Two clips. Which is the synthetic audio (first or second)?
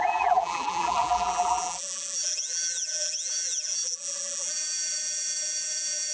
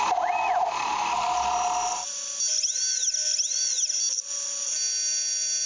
first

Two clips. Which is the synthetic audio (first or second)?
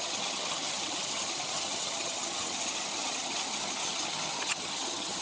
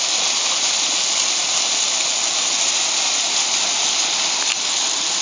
first